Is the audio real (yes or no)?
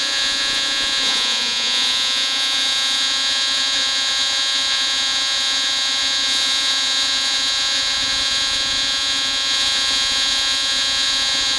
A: no